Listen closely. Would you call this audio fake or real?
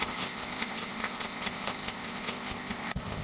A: fake